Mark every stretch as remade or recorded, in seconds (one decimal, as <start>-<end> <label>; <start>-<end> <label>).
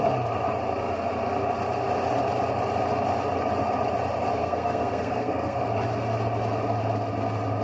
0.0-4.4 recorded; 4.4-5.6 remade; 5.6-7.6 recorded